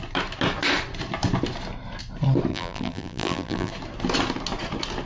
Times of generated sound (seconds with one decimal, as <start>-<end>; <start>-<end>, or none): 2.5-3.7